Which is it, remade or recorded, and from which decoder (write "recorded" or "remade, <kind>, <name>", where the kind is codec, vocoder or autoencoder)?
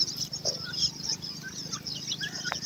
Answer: recorded